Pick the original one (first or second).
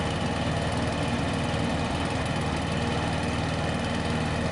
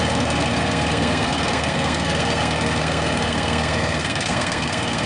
first